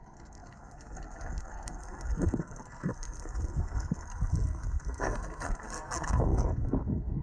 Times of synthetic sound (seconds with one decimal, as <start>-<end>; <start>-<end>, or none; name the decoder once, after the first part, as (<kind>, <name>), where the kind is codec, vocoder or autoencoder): 0.0-7.2 (codec, SNAC)